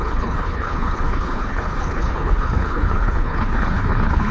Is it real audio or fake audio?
fake